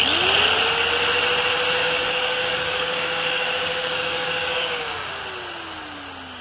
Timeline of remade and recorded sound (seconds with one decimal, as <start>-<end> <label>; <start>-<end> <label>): 0.0-1.8 recorded; 1.8-5.1 remade; 5.1-6.4 recorded